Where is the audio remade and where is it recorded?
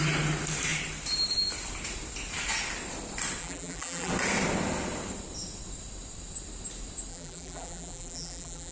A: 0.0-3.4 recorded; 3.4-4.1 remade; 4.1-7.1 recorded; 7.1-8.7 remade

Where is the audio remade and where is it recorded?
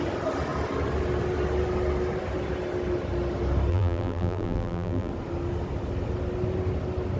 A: 0.0-3.7 recorded; 3.7-5.1 remade; 5.1-7.2 recorded